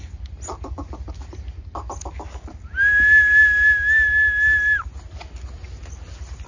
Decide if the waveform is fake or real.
real